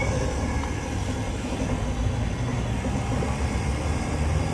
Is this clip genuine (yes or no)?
yes